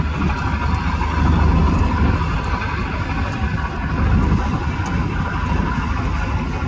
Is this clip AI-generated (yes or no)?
no